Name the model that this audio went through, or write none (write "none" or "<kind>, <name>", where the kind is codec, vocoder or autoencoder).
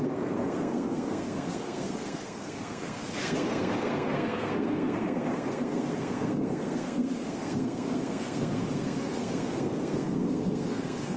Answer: codec, SNAC